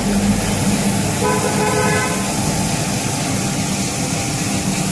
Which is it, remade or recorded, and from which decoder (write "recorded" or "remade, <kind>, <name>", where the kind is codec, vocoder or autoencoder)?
recorded